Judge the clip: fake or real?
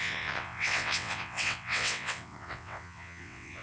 fake